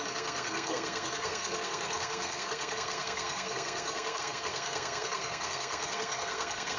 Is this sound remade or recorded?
remade